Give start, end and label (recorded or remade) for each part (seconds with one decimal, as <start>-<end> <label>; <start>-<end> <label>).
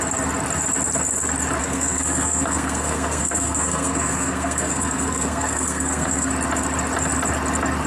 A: 0.0-1.6 recorded; 1.6-6.3 remade; 6.3-7.9 recorded